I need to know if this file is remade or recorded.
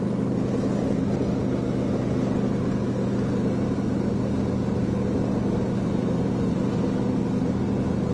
recorded